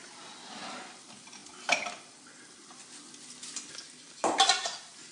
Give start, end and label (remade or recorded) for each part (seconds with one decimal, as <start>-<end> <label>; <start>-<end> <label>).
0.0-5.1 recorded